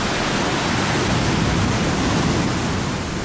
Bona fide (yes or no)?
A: yes